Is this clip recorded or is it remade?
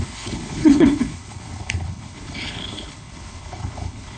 remade